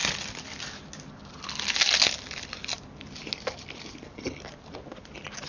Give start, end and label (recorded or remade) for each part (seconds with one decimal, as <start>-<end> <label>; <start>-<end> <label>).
0.0-5.5 recorded